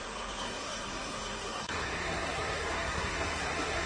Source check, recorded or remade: remade